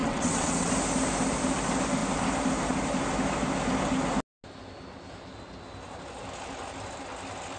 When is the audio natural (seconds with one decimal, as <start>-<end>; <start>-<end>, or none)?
0.7-7.6